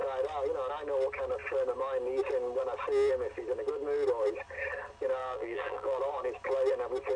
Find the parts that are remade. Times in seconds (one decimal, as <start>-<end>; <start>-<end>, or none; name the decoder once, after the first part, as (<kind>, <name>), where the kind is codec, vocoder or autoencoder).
5.2-6.0 (vocoder, BigVGAN v2)